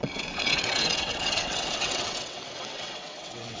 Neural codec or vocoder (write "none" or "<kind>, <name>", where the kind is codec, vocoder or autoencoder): vocoder, WaveNeXt